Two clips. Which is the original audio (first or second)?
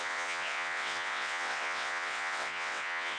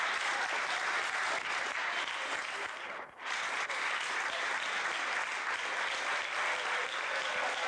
second